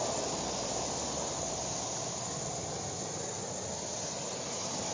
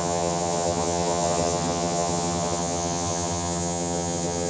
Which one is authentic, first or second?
first